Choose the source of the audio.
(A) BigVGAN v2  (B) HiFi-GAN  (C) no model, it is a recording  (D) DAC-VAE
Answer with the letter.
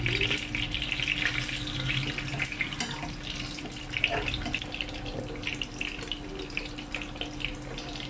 C